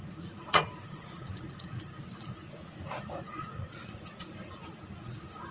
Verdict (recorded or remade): remade